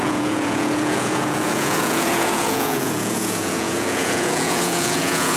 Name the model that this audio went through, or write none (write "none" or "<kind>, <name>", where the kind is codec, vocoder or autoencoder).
vocoder, Vocos